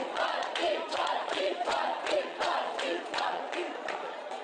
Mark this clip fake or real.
fake